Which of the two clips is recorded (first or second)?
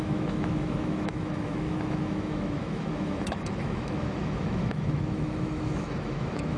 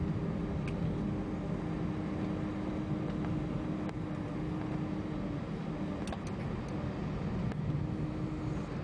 second